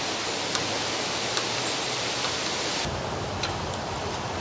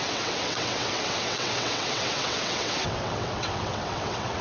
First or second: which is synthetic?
second